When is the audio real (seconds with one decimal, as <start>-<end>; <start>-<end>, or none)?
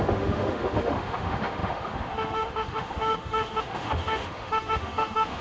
none